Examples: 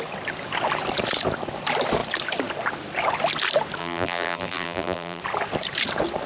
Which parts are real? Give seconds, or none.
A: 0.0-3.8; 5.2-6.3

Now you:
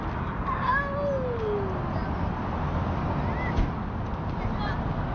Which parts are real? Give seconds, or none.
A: 0.0-5.1

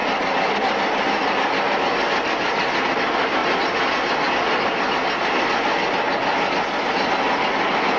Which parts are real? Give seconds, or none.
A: 0.0-8.0

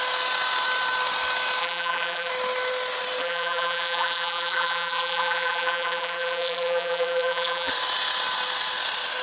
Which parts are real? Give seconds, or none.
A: 0.0-1.6; 2.3-3.2; 7.7-9.2

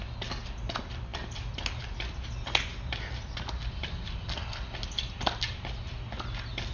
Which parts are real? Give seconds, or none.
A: 0.0-6.7

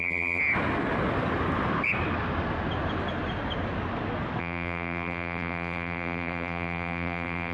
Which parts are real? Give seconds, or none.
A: 0.4-4.4